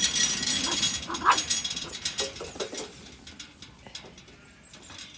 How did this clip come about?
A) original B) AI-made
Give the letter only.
A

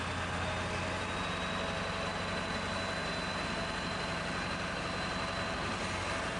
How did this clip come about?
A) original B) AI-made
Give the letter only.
A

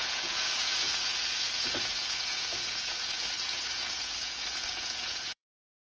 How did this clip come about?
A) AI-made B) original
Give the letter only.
A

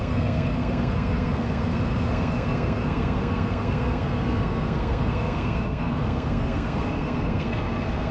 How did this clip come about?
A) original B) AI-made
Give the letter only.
B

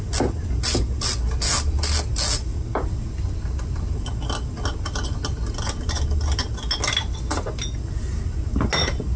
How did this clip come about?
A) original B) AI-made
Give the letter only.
A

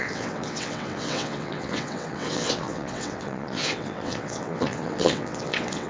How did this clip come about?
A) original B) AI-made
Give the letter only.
B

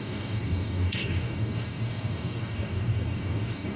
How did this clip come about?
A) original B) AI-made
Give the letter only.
B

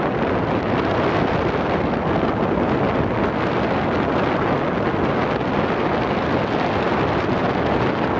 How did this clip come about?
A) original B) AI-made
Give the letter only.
A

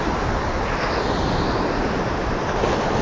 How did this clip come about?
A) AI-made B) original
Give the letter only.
B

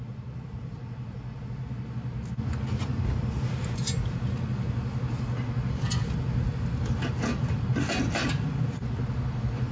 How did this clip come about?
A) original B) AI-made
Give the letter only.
A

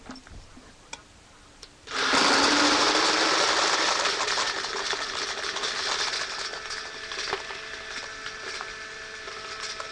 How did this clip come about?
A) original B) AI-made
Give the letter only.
A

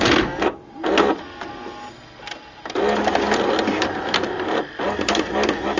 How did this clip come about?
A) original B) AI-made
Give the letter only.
A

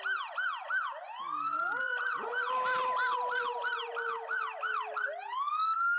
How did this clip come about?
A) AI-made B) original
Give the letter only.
B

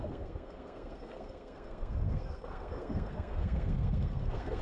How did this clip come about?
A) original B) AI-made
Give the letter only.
B